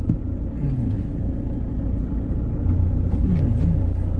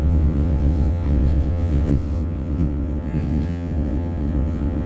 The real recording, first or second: first